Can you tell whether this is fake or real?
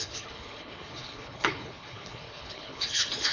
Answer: fake